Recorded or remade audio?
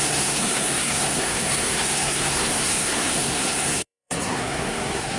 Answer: remade